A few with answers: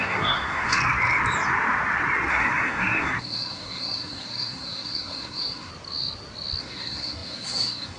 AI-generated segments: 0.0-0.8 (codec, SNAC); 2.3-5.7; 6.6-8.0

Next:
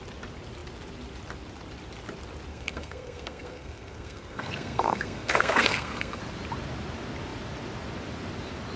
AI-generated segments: 2.5-6.2 (codec, SNAC)